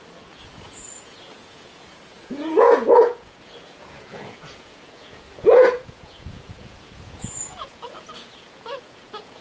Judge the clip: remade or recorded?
remade